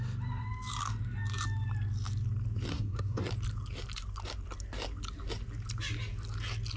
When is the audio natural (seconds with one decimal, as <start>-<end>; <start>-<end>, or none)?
0.0-2.7; 3.3-6.8